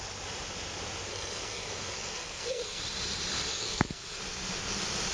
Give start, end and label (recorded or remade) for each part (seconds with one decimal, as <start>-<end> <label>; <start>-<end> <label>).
0.0-1.1 recorded; 1.1-2.8 remade; 2.8-3.5 recorded; 3.5-4.2 remade; 4.2-5.1 recorded